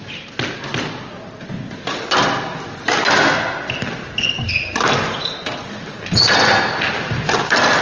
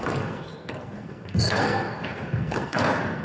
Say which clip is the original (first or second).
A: first